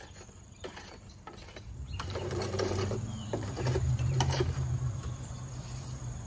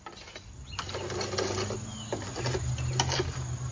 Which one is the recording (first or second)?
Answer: second